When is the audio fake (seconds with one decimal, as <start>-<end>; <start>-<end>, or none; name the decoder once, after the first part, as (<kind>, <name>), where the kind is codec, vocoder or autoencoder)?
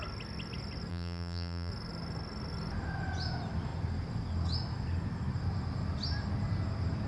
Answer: 0.9-1.7 (vocoder, BigVGAN v2)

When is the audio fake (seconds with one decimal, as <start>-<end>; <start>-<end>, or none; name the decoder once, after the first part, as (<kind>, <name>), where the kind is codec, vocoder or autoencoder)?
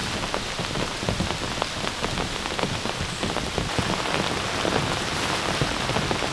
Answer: none